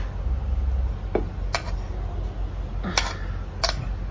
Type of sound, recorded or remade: recorded